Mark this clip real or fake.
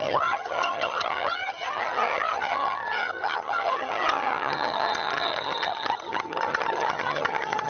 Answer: fake